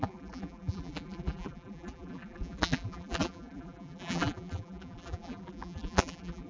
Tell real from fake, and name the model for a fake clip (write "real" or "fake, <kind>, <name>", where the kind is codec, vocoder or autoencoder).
fake, vocoder, BigVGAN v2